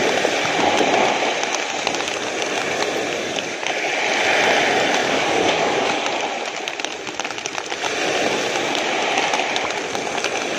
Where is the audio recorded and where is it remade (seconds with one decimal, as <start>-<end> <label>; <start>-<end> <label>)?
0.0-3.2 recorded; 3.2-3.9 remade; 3.9-5.0 recorded; 5.0-6.0 remade; 6.0-10.6 recorded